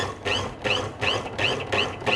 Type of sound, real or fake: real